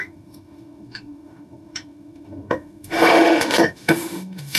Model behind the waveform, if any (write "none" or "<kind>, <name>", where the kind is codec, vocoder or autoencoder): autoencoder, DAC-VAE